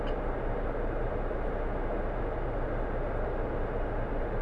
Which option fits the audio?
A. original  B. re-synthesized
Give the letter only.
A